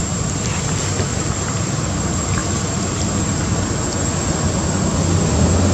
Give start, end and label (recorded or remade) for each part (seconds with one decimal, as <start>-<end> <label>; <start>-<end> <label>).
0.0-1.2 remade; 1.2-5.7 recorded